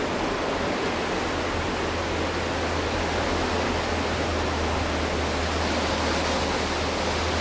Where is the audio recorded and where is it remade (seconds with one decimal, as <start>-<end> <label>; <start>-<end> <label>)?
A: 0.0-7.4 recorded